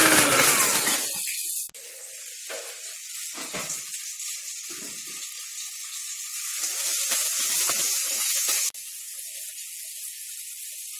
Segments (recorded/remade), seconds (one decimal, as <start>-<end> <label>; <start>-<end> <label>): 0.0-8.0 recorded; 8.0-8.9 remade; 8.9-11.0 recorded